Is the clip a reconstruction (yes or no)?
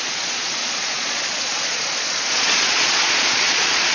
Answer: yes